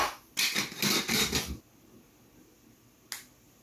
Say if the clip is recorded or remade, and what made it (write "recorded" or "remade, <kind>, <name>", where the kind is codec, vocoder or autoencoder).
recorded